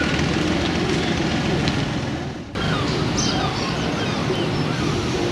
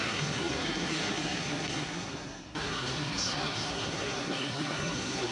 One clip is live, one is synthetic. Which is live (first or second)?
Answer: first